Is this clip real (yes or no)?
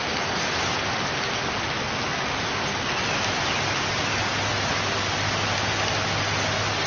yes